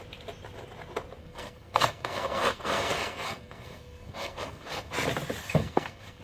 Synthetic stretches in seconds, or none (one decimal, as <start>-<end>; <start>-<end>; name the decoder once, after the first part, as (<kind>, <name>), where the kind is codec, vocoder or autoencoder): 1.2-4.9 (codec, SNAC); 5.4-6.2